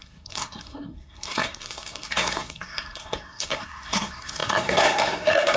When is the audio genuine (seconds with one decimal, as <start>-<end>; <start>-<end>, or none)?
none